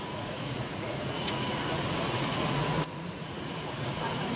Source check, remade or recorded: remade